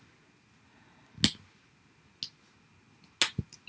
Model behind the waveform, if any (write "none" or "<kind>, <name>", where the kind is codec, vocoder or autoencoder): none